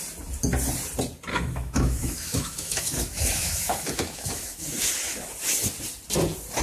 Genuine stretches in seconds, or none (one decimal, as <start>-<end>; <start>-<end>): 0.0-1.3; 4.9-6.6